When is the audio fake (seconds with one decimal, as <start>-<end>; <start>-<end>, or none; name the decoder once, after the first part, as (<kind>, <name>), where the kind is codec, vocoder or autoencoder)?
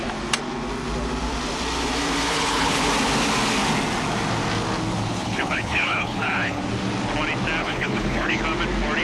2.3-2.9 (codec, HILCodec); 5.1-6.6; 7.6-8.4